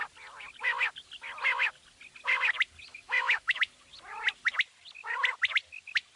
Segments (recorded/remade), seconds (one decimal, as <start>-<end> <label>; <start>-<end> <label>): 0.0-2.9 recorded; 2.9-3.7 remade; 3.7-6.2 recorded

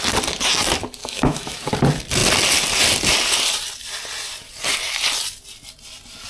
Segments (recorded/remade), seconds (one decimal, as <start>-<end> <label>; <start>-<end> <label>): 0.0-1.0 recorded; 1.0-1.7 remade; 1.7-6.3 recorded

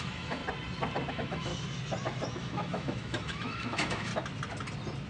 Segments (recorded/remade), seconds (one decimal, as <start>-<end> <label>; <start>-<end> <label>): 0.0-0.4 remade; 0.4-1.1 recorded; 1.1-1.5 remade; 1.5-2.3 recorded; 2.3-4.1 remade; 4.1-5.1 recorded

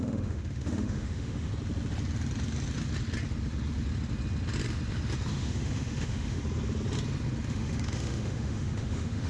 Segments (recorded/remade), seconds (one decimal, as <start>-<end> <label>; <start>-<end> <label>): 0.0-1.5 remade; 1.5-5.3 recorded; 5.3-6.4 remade; 6.4-7.5 recorded; 7.5-9.3 remade

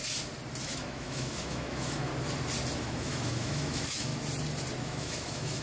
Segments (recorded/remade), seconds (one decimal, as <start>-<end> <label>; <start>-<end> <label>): 0.0-0.6 recorded; 0.6-2.1 remade; 2.1-2.8 recorded; 2.8-4.1 remade; 4.1-4.8 recorded; 4.8-5.6 remade

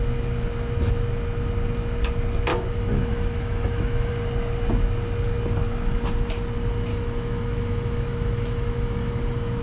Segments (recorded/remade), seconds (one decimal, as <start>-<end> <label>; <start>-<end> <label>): 0.0-2.5 recorded; 2.5-4.1 remade; 4.1-6.9 recorded; 6.9-9.6 remade

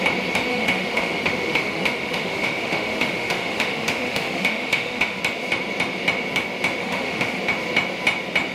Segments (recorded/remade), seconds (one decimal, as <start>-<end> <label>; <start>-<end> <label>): 0.0-0.5 recorded; 0.5-5.2 remade; 5.2-6.8 recorded; 6.8-7.4 remade; 7.4-8.5 recorded